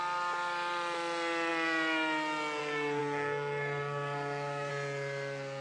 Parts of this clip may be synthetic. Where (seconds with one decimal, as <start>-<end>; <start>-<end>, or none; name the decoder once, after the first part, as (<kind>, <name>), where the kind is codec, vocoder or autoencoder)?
3.0-4.7 (codec, SNAC)